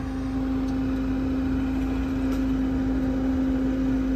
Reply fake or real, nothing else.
real